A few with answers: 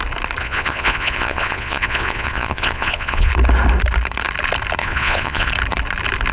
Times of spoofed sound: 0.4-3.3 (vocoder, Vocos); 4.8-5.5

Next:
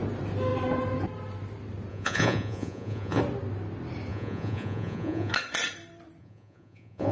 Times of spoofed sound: 1.9-3.2 (vocoder, Vocos); 4.1-5.3; 6.2-7.1

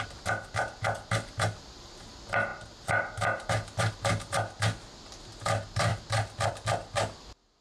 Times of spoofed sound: none

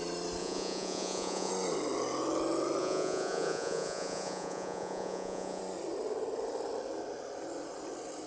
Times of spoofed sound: 0.4-1.5 (vocoder, Vocos); 2.8-5.6